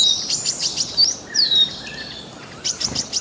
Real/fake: fake